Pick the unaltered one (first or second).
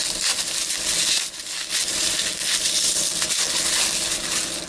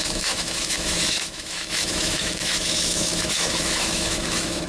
first